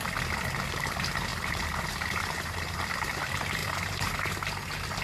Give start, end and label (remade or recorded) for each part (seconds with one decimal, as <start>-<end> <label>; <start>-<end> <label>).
0.0-1.3 recorded; 1.3-2.8 remade; 2.8-3.6 recorded; 3.6-4.1 remade; 4.1-5.0 recorded